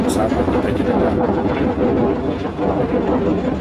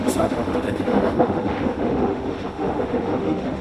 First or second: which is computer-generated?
second